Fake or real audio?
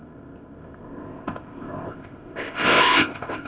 fake